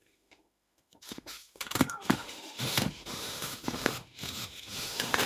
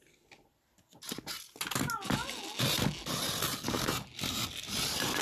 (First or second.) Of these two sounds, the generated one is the first